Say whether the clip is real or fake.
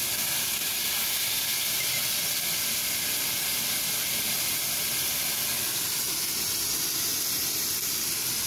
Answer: real